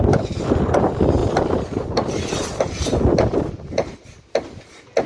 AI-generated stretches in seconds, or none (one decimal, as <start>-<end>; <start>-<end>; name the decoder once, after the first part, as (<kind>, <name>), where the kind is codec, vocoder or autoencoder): none